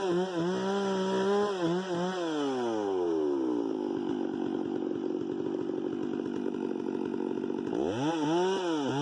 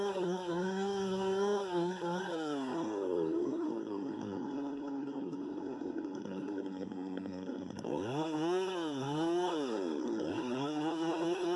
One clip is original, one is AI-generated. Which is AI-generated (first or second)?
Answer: second